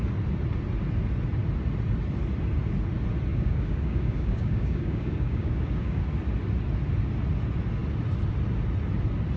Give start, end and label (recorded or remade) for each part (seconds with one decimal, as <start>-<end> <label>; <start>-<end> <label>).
0.0-3.3 recorded; 3.3-6.0 remade; 6.0-9.4 recorded